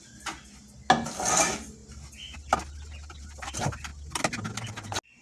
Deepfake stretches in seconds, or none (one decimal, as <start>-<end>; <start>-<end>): none